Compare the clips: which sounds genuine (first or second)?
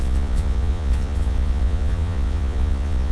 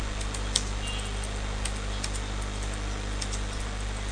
second